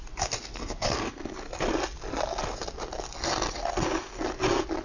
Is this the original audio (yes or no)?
yes